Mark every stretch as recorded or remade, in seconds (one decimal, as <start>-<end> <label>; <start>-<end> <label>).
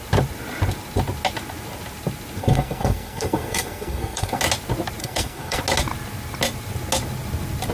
0.0-2.4 recorded; 2.4-4.4 remade; 4.4-5.0 recorded; 5.0-5.6 remade; 5.6-7.7 recorded